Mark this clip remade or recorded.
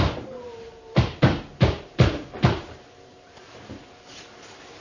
remade